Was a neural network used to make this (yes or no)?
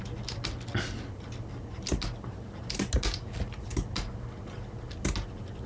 no